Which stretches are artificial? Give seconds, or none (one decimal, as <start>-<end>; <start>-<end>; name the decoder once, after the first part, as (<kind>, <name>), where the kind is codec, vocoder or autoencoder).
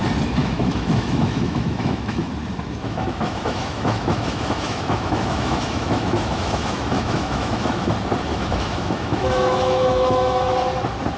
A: 0.4-2.3 (autoencoder, DAC-VAE); 2.8-7.9; 8.3-10.5